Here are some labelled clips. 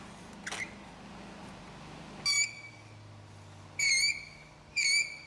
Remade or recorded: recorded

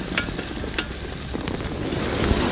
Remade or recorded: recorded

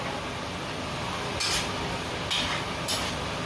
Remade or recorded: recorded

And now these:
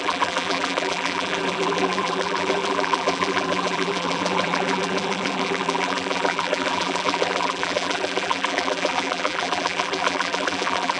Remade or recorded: remade